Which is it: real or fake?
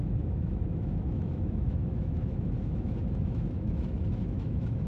fake